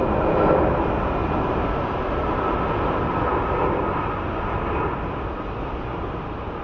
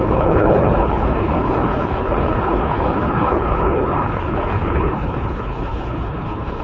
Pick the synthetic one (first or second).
second